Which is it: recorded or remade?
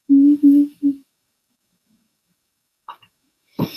remade